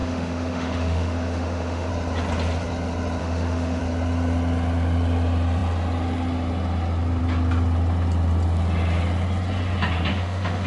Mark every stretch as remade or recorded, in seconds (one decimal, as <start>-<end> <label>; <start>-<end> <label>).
0.0-1.9 remade; 1.9-3.2 recorded; 3.2-3.8 remade; 3.8-10.1 recorded; 10.1-10.7 remade